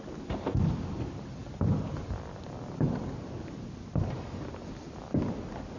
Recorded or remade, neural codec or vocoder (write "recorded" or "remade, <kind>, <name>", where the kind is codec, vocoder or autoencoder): recorded